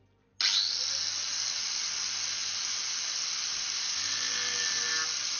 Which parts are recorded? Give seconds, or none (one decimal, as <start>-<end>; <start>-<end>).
0.0-5.4